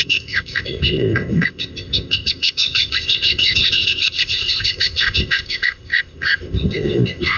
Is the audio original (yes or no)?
no